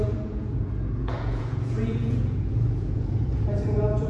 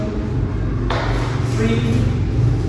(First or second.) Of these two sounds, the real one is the second